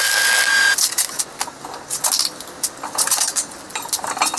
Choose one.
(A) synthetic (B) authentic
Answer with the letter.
B